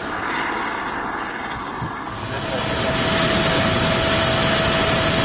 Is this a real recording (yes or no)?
yes